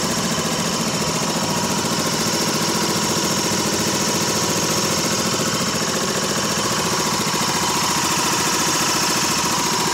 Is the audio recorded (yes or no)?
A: yes